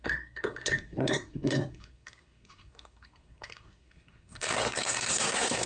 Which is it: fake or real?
fake